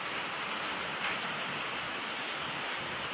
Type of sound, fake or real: real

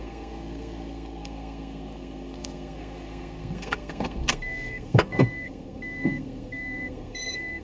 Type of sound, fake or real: fake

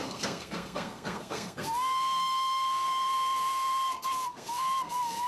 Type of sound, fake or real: fake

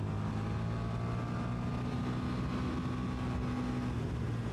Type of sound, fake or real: real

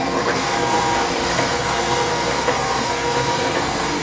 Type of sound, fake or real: fake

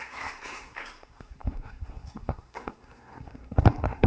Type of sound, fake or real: fake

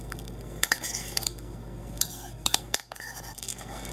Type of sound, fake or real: fake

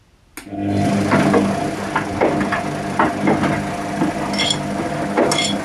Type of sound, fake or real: real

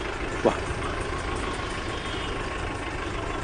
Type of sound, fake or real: real